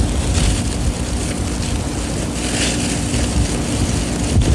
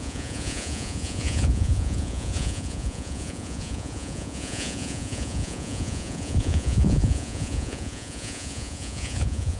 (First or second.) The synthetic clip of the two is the second